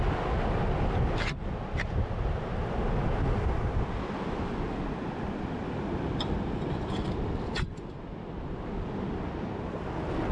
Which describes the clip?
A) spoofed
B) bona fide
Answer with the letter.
B